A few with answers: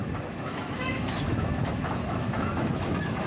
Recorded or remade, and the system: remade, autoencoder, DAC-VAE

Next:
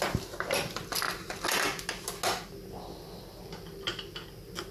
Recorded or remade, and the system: recorded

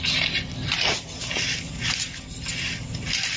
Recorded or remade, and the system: recorded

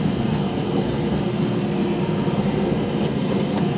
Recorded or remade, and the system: remade, codec, SNAC